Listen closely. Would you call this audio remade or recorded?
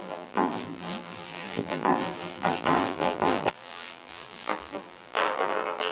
remade